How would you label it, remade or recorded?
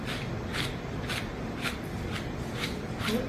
recorded